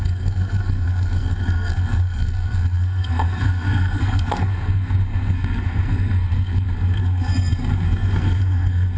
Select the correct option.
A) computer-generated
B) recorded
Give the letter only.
A